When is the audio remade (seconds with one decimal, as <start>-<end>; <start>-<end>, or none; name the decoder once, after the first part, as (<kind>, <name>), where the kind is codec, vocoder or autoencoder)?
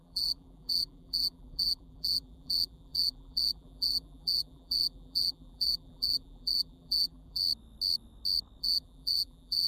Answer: 0.0-7.4 (vocoder, BigVGAN v2); 8.6-9.7